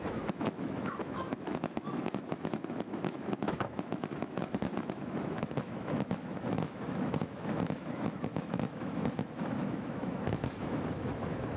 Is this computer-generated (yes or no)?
yes